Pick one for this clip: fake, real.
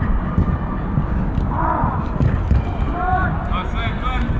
real